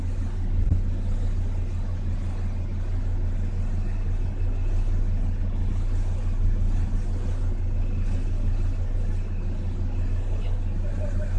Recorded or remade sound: recorded